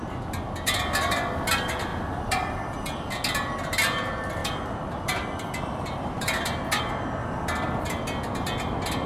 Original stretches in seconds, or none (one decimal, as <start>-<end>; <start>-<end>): 0.0-1.9; 2.7-4.4; 6.8-7.2; 7.8-9.1